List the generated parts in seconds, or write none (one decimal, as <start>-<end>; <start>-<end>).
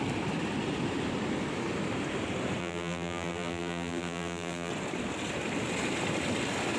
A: 2.6-4.7